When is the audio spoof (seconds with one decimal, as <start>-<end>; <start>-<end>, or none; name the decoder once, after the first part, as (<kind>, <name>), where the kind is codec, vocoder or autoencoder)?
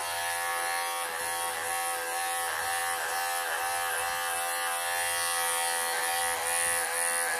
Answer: none